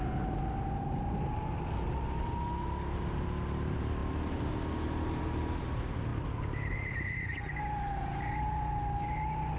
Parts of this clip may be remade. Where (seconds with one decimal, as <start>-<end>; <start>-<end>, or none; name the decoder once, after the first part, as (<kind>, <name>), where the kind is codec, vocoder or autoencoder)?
none